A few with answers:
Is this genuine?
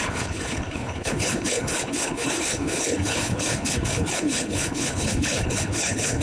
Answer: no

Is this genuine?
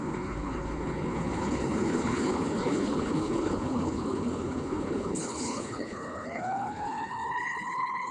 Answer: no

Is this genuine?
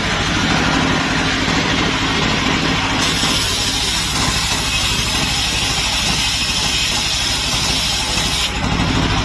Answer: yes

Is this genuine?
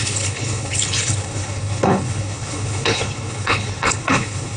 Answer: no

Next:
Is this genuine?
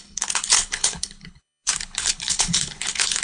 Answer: no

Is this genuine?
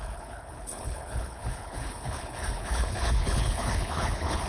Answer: no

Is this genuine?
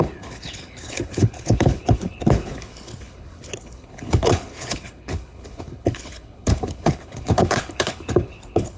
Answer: no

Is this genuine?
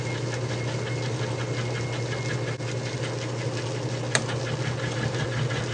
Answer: yes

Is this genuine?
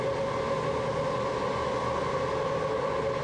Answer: yes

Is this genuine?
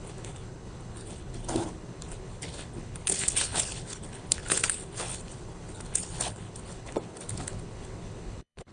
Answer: no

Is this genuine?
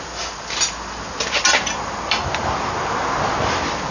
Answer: yes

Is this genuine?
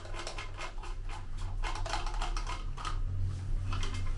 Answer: yes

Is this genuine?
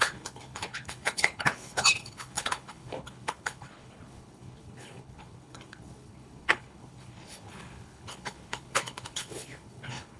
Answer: no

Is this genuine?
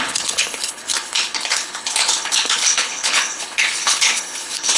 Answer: no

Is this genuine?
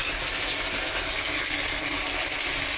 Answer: yes